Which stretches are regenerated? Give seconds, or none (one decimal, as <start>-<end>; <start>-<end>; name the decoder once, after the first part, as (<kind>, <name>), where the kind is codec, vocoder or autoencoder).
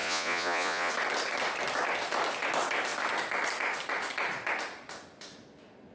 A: 0.0-0.9 (vocoder, Vocos)